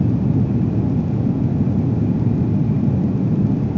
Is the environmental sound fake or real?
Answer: real